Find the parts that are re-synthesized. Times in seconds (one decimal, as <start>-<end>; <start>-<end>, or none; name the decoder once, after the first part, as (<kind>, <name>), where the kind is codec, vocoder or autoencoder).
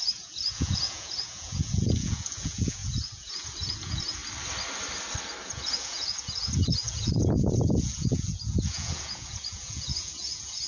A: 0.0-4.2 (vocoder, Vocos); 5.4-10.7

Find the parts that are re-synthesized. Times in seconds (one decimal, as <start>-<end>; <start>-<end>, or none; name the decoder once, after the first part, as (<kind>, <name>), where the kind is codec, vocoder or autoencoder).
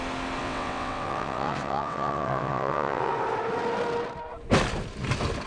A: 0.4-3.1 (vocoder, WaveNeXt)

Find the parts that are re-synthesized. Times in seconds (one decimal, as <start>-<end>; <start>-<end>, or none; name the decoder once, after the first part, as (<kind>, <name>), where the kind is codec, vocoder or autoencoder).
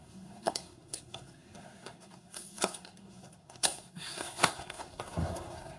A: 0.0-5.8 (codec, SNAC)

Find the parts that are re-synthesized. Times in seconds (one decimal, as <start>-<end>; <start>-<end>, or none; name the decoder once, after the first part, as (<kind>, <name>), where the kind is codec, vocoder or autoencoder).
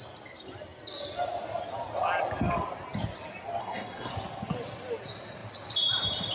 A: 3.6-4.1 (codec, SNAC)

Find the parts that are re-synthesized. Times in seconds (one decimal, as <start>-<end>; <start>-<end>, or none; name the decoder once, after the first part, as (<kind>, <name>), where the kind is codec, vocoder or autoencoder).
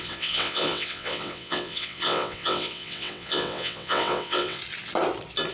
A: 0.0-4.6 (vocoder, WaveNeXt)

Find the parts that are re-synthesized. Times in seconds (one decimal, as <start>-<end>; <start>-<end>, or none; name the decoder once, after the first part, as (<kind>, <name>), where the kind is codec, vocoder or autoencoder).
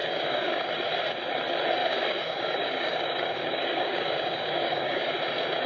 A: 0.0-0.7 (codec, DAC); 1.8-5.2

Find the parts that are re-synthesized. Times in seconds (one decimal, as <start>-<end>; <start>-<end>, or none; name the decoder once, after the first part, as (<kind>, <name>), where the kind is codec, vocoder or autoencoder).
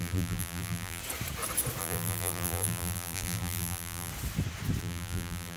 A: 0.0-1.0 (vocoder, BigVGAN v2); 1.8-4.1; 4.8-5.6